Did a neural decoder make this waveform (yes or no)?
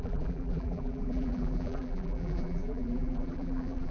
yes